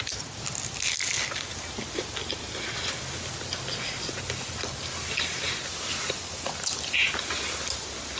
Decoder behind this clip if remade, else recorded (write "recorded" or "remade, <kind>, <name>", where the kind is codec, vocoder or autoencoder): recorded